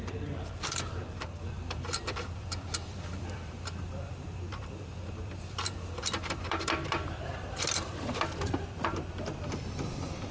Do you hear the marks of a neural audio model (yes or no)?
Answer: yes